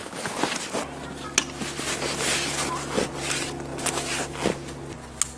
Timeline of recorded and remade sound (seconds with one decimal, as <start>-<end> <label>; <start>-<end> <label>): 0.0-5.4 recorded